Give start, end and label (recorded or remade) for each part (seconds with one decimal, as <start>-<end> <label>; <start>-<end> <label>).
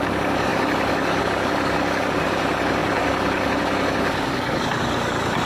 0.0-5.5 remade